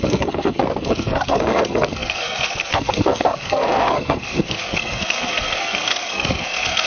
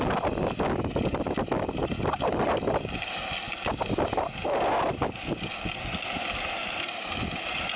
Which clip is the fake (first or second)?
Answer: first